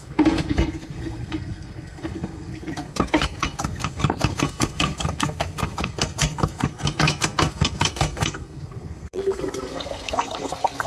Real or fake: fake